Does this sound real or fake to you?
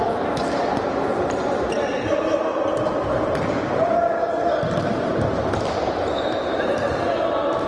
real